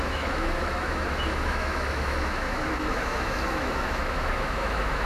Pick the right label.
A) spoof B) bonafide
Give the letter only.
A